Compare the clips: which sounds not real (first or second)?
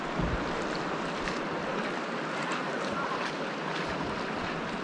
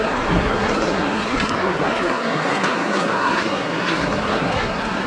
second